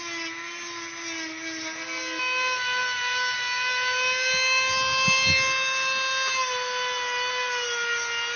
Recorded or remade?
recorded